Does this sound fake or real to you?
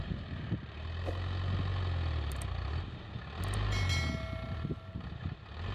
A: real